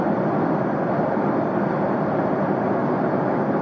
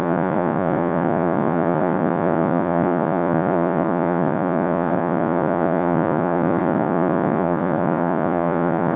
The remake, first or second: second